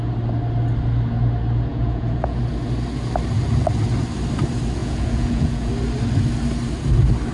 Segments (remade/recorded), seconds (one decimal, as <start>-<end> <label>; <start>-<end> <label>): 0.0-1.7 recorded; 1.7-2.4 remade; 2.4-4.8 recorded; 4.8-5.7 remade; 5.7-7.3 recorded